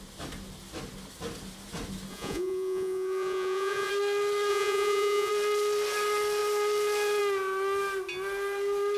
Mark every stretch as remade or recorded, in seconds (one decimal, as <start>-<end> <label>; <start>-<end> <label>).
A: 0.0-2.1 recorded; 2.1-3.9 remade; 3.9-4.5 recorded; 4.5-5.3 remade; 5.3-9.0 recorded